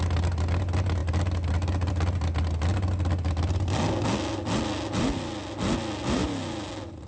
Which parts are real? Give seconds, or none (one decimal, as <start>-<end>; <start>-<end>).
0.0-7.1